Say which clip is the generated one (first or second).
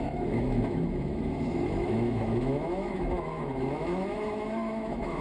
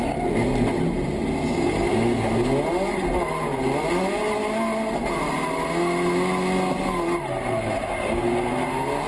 first